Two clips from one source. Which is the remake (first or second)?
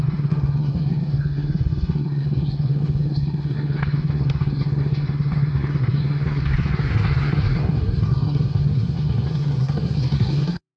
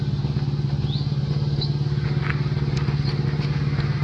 first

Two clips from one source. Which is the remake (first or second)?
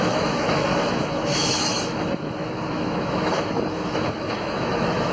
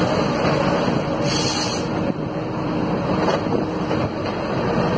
first